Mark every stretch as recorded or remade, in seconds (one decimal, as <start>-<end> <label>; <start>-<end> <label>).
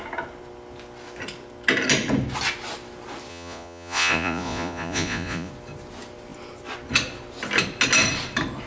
0.0-3.3 recorded; 3.3-5.5 remade; 5.5-8.7 recorded